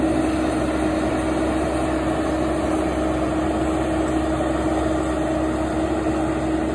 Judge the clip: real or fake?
real